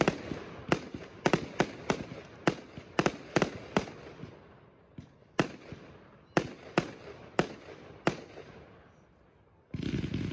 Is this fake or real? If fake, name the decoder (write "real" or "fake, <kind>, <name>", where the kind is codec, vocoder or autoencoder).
real